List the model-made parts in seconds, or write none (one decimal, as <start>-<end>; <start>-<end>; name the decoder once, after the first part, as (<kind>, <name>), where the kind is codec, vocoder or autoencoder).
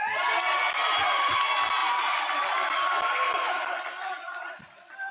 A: 1.8-5.1 (vocoder, BigVGAN v2)